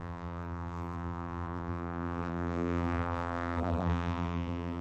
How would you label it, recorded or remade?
remade